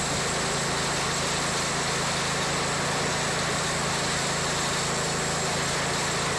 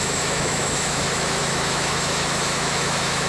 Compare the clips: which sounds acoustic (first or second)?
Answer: first